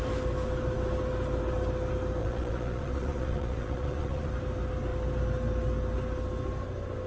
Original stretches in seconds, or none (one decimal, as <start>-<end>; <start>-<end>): 0.0-2.2; 4.3-7.1